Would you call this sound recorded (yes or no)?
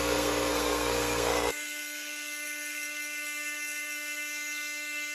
no